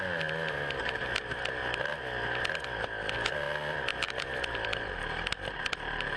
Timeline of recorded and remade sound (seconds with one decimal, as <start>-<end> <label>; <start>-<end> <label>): 0.0-6.2 recorded